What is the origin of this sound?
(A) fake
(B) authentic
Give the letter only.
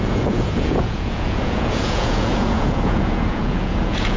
A